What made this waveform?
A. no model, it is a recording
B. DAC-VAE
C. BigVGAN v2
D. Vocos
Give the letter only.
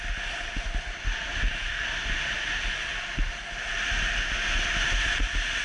A